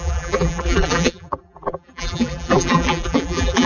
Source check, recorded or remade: remade